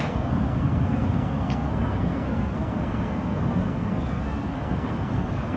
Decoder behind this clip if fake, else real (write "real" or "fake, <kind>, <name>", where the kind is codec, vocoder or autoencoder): fake, codec, SNAC